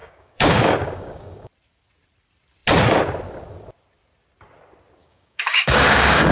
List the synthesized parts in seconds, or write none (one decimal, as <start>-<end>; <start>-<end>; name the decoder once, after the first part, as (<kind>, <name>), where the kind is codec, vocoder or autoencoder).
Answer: 0.0-1.5 (codec, DAC); 5.0-6.3